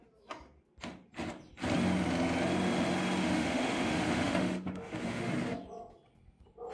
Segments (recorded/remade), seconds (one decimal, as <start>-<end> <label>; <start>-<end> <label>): 0.0-3.2 recorded; 3.2-5.3 remade; 5.3-6.7 recorded